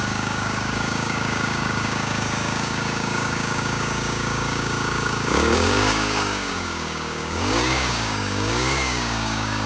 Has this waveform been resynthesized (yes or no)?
yes